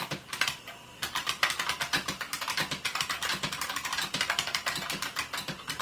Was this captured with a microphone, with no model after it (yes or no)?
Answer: yes